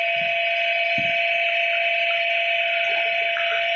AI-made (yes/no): no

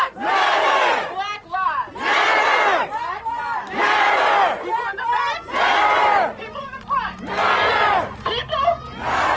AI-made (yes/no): no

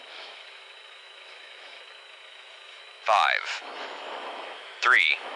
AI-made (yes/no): yes